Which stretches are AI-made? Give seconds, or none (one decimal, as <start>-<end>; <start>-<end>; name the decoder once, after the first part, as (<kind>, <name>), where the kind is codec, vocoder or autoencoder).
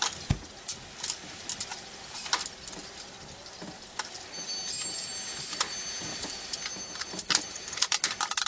6.1-8.1 (vocoder, BigVGAN v2)